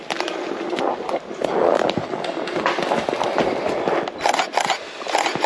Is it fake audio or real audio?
real